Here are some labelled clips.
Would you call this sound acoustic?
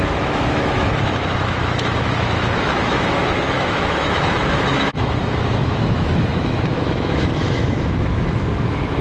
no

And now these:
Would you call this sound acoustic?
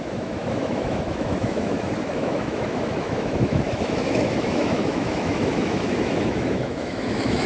no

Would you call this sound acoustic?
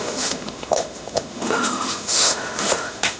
no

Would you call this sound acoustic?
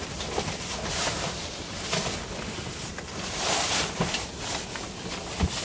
yes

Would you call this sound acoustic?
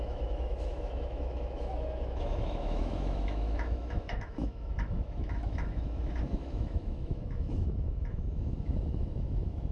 no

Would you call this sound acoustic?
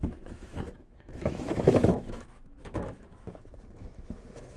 no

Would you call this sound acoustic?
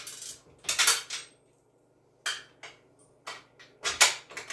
yes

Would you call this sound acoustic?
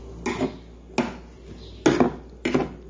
yes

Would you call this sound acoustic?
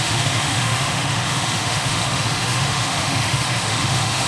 no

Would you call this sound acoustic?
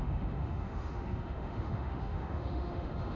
no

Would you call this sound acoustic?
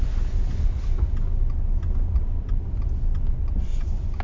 yes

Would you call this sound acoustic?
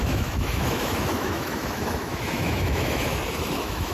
no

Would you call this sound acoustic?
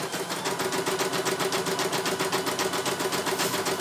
yes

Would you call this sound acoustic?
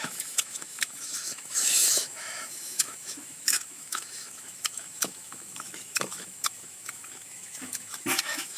no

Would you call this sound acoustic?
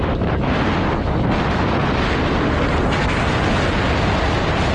yes